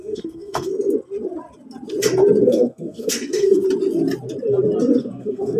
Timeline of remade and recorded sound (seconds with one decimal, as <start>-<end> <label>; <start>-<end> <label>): 0.0-0.7 remade; 0.7-2.4 recorded; 2.4-3.6 remade; 3.6-5.0 recorded; 5.0-5.6 remade